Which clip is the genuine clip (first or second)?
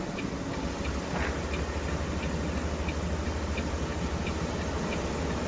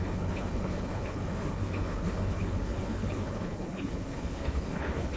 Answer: first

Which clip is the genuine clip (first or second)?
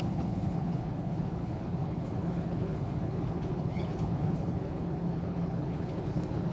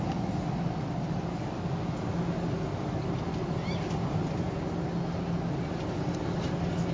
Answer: second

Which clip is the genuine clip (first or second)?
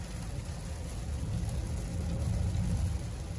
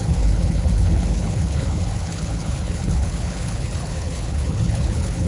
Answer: first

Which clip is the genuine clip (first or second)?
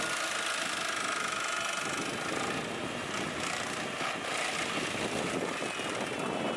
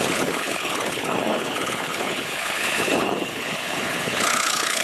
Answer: first